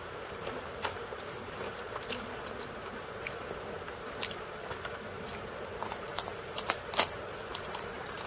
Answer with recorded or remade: remade